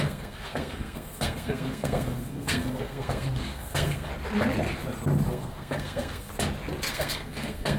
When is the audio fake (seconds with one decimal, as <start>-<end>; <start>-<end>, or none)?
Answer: 0.0-4.1; 5.3-6.3; 6.9-7.8